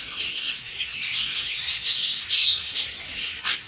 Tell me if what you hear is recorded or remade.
remade